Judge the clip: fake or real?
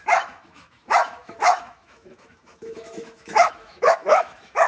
fake